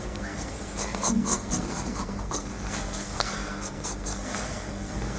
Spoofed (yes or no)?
yes